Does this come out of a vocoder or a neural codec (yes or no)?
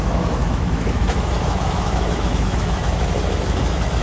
yes